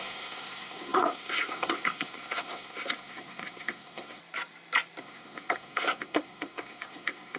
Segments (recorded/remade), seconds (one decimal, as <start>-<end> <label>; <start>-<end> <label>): 0.0-4.2 remade; 4.2-5.0 recorded; 5.0-7.4 remade